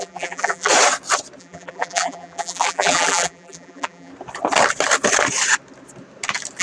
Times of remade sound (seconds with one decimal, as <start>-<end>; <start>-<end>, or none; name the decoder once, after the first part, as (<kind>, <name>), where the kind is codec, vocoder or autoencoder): 0.0-0.7 (vocoder, BigVGAN v2); 1.4-4.1

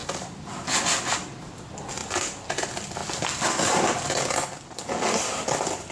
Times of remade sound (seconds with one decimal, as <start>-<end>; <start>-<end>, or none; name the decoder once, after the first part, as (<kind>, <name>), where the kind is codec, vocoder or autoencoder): 0.0-3.0 (vocoder, BigVGAN v2); 5.5-5.9

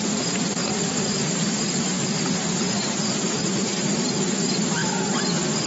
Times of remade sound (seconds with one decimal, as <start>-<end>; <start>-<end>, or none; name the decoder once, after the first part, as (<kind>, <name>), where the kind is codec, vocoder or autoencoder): 1.1-3.8 (vocoder, BigVGAN v2)

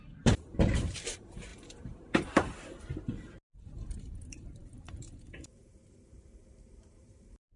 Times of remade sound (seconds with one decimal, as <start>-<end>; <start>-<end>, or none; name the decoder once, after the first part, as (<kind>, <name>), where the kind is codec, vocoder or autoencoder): 0.0-7.6 (vocoder, BigVGAN v2)